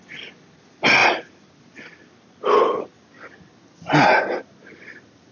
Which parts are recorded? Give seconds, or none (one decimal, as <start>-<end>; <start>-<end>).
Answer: 0.0-5.3